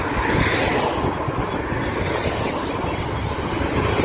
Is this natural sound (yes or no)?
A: yes